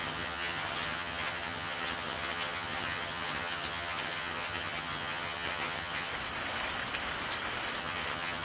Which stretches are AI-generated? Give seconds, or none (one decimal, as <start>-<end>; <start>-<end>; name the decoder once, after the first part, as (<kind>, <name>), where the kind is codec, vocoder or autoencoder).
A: 0.0-6.1 (vocoder, HiFi-GAN); 7.8-8.4